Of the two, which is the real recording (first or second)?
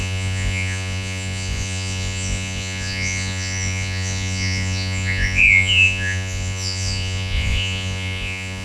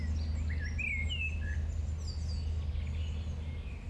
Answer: second